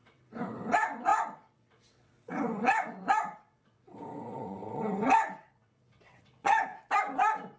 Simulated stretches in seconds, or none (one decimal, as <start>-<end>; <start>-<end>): 0.0-6.7